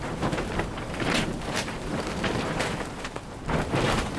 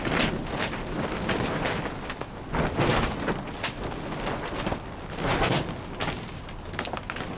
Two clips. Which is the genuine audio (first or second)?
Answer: second